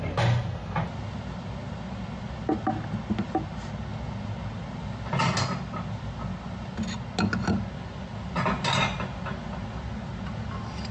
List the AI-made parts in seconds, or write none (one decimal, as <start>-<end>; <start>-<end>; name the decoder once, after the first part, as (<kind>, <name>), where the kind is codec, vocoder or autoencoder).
none